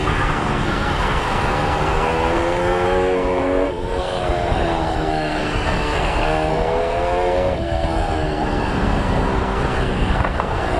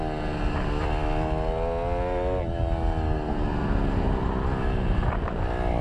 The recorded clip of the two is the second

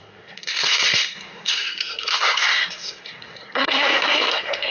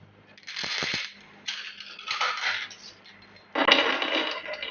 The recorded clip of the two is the second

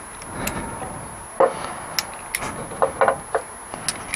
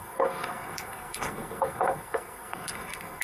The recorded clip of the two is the first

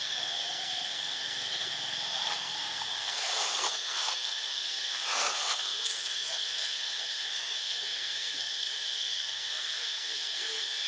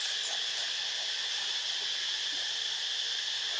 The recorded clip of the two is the second